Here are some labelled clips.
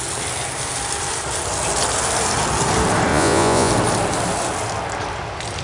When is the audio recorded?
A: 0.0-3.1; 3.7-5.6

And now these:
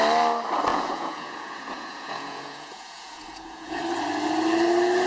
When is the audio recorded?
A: 0.0-0.7; 3.8-5.1

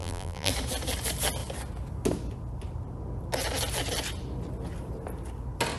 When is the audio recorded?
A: 0.5-5.8

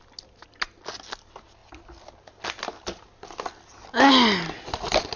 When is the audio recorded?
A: 0.0-5.2

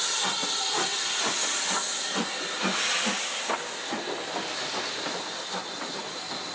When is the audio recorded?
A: 0.0-6.5

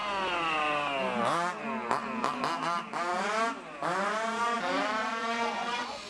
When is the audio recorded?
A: 0.0-5.0